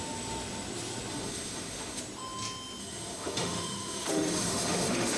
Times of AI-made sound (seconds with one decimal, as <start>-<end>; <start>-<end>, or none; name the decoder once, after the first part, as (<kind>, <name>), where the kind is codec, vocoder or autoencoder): 1.1-2.0 (autoencoder, DAC-VAE); 2.8-5.2

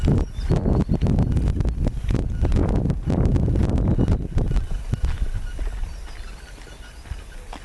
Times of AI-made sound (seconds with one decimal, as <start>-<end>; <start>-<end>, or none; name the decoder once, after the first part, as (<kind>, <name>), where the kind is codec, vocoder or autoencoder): none

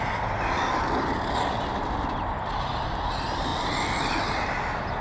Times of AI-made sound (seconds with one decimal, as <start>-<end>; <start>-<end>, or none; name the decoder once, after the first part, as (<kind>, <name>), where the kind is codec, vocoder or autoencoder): none

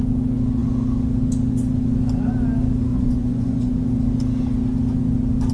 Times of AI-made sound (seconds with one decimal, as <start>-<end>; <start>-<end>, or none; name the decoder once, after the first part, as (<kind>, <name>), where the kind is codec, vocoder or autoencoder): 2.9-3.7 (vocoder, Vocos)